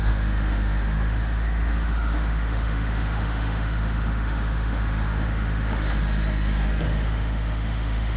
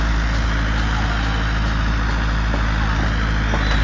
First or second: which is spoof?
first